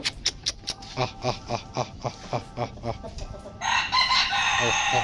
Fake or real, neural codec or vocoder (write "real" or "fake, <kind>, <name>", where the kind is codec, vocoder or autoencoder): fake, vocoder, BigVGAN v2